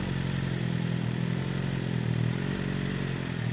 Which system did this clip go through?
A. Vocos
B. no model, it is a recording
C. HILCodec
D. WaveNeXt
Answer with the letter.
B